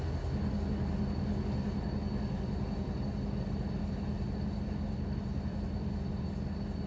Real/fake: real